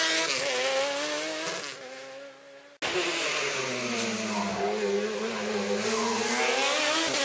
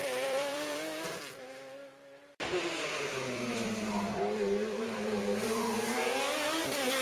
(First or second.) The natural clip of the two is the first